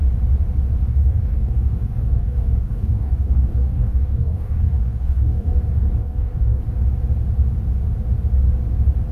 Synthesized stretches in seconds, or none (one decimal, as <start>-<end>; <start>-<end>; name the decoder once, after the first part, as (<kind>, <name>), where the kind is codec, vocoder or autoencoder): 0.9-5.6 (codec, DAC); 6.0-6.6

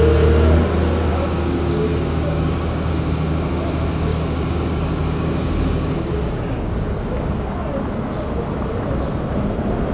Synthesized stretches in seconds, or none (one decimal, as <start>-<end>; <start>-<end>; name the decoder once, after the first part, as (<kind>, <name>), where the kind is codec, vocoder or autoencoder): 1.1-2.9 (codec, DAC); 4.1-7.5